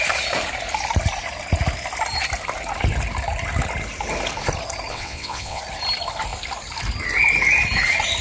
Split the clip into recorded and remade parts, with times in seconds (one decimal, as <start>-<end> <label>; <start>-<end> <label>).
0.0-4.9 recorded; 4.9-5.6 remade; 5.6-8.2 recorded